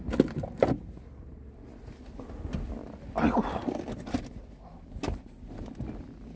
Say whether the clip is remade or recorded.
recorded